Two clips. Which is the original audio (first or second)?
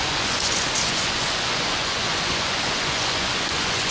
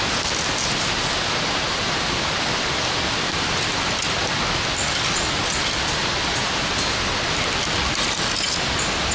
second